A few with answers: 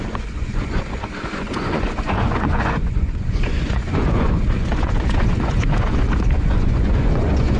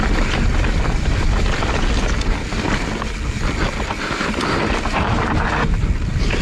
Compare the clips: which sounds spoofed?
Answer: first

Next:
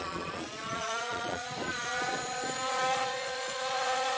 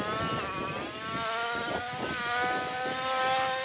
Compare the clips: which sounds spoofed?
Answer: first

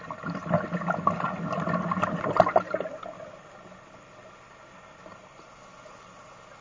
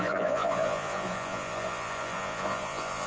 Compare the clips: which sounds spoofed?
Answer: second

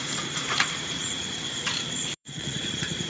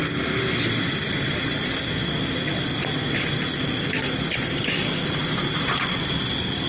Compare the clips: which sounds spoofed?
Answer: first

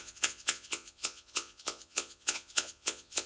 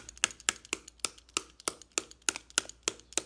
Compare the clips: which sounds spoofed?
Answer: first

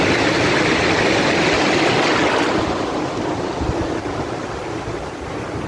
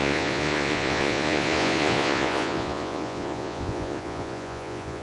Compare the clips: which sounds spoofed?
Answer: second